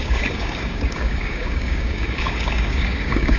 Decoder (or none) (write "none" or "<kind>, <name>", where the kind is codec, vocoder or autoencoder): codec, DAC